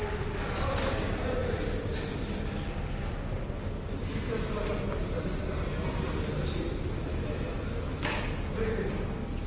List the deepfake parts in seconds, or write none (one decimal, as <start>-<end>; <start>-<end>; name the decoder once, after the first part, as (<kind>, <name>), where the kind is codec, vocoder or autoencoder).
7.1-8.2 (autoencoder, DAC-VAE)